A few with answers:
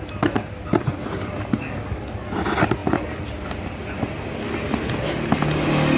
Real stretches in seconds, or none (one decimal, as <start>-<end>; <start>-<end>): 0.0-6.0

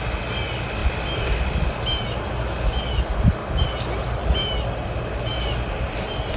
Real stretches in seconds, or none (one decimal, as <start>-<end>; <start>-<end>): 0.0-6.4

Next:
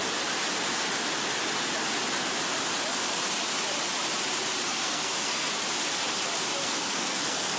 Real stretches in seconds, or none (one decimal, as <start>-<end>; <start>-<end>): 0.0-4.7; 5.5-6.6

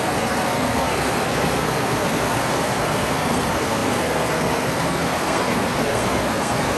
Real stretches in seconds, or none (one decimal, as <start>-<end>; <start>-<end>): none